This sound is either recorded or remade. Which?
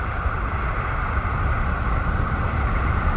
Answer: recorded